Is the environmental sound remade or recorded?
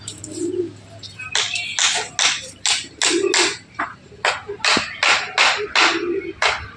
recorded